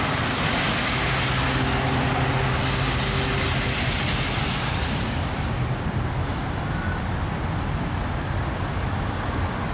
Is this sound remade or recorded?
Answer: recorded